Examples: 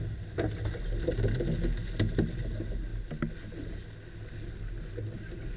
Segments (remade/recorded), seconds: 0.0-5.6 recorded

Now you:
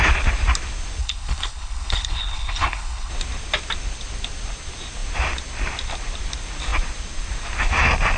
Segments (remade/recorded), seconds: 0.0-1.0 recorded; 1.0-3.1 remade; 3.1-8.2 recorded

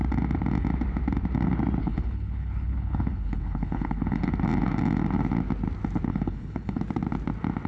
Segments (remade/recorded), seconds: 0.0-1.8 recorded; 1.8-4.3 remade; 4.3-6.1 recorded; 6.1-6.8 remade; 6.8-7.7 recorded

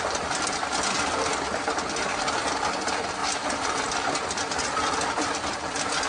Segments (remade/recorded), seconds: 0.0-6.1 recorded

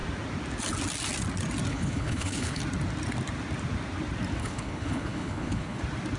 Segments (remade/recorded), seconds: 0.0-1.7 recorded; 1.7-2.6 remade; 2.6-4.4 recorded; 4.4-5.8 remade; 5.8-6.2 recorded